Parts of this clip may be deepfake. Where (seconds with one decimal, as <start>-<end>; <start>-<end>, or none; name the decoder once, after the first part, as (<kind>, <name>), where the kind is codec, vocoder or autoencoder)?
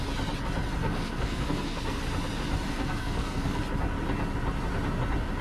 0.8-2.0 (codec, SNAC); 2.7-3.6